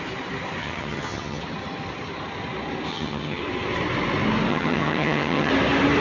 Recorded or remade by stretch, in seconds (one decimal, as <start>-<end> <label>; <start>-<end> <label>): 0.0-0.6 recorded; 0.6-1.4 remade; 1.4-2.9 recorded; 2.9-3.4 remade; 3.4-4.5 recorded; 4.5-5.5 remade; 5.5-6.0 recorded